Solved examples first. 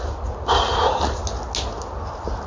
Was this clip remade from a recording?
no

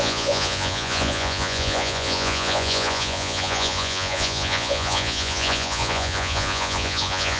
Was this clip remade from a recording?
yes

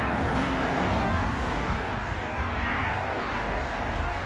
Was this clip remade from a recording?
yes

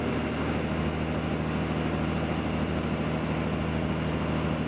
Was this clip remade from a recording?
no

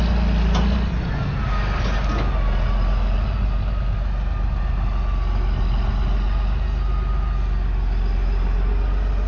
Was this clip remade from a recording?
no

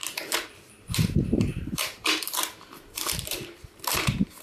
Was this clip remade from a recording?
yes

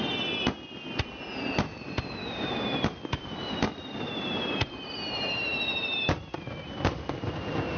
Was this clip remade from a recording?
no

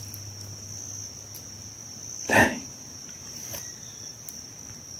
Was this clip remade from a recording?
no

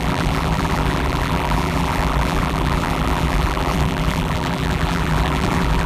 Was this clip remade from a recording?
yes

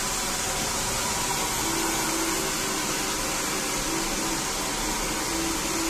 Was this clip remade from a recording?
no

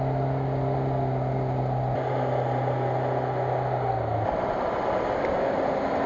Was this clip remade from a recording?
no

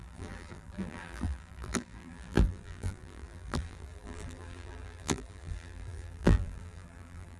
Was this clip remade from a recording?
yes